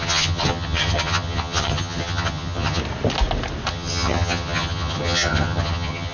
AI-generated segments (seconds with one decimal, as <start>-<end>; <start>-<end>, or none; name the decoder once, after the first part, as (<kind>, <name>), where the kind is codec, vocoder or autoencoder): 0.0-2.8 (vocoder, HiFi-GAN); 3.7-6.1